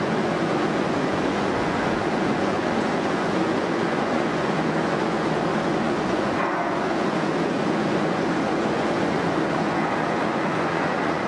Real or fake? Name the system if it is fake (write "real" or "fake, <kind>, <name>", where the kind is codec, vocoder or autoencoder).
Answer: fake, vocoder, Vocos